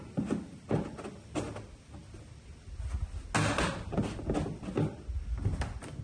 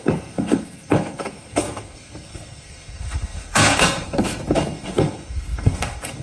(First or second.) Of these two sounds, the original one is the first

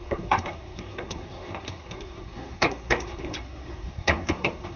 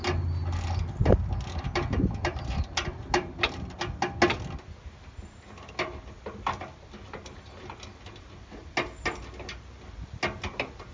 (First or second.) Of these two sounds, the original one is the second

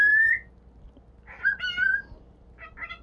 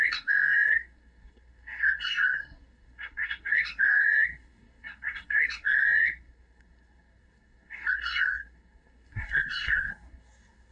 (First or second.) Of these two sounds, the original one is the first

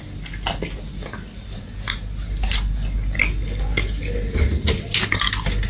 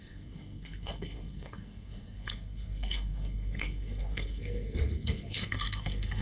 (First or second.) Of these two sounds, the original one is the first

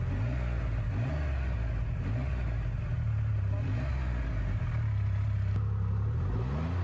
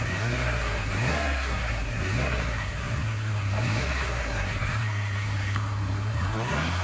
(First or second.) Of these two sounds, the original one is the first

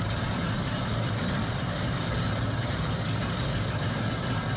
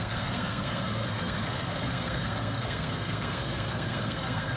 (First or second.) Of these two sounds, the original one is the first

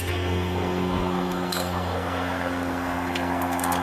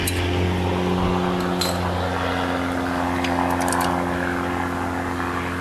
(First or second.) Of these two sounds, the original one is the second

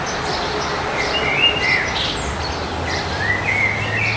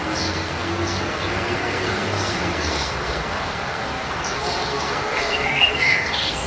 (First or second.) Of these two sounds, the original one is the first